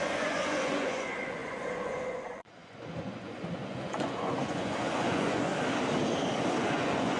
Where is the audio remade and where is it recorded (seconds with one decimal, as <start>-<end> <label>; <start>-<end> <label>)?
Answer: 0.0-5.5 remade; 5.5-6.6 recorded; 6.6-7.2 remade